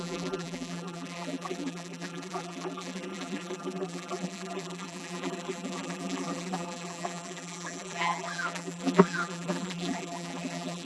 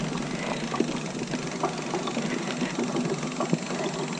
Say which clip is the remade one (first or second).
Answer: first